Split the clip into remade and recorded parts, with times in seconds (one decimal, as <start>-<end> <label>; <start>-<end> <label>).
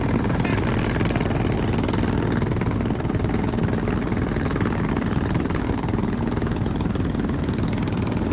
0.0-0.5 remade; 0.5-4.9 recorded; 4.9-8.3 remade